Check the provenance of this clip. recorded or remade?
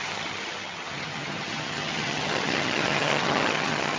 remade